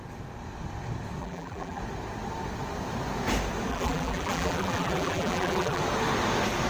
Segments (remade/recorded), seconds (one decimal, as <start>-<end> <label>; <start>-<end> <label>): 0.0-1.2 recorded; 1.2-1.8 remade; 1.8-3.7 recorded; 3.7-5.8 remade; 5.8-6.7 recorded